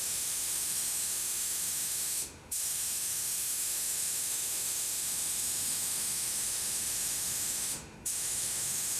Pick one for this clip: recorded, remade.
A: remade